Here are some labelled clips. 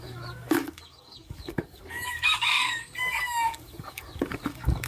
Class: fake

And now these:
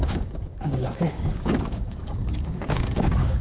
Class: fake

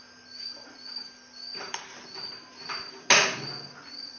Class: real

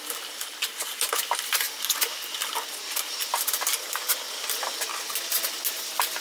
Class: real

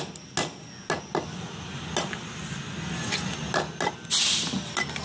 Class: real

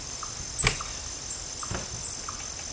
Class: real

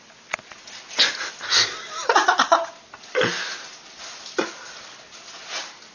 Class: real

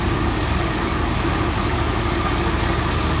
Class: fake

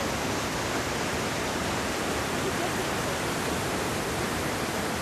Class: real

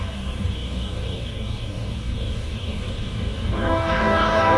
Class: fake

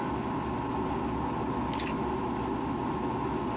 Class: real